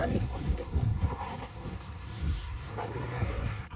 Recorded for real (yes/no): no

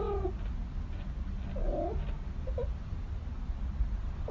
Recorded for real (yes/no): yes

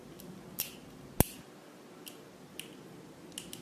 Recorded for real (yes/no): yes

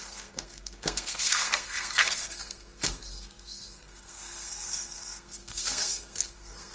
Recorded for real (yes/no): no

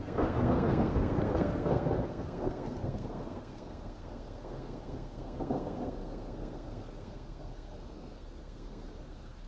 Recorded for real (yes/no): no